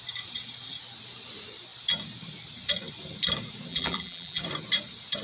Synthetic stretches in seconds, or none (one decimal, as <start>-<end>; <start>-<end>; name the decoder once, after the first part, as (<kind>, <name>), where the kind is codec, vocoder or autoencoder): 3.7-4.4 (vocoder, BigVGAN v2)